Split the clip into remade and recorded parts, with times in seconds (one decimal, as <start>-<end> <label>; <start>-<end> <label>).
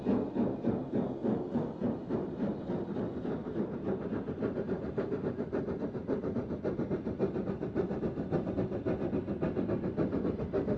0.0-1.8 recorded; 1.8-2.3 remade; 2.3-3.4 recorded; 3.4-8.5 remade; 8.5-10.8 recorded